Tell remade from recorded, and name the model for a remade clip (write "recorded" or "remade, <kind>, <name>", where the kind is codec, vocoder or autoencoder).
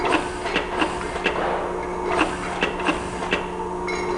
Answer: recorded